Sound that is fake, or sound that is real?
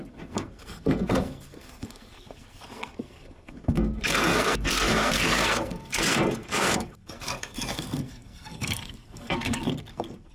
fake